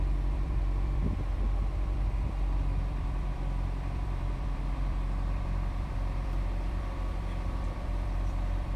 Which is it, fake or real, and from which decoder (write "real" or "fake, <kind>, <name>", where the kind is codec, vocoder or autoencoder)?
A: fake, vocoder, BigVGAN v2